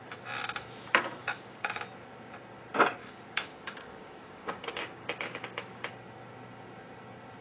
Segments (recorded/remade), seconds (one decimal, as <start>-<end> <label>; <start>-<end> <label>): 0.0-1.2 recorded; 1.2-1.8 remade; 1.8-3.0 recorded; 3.0-5.9 remade; 5.9-7.4 recorded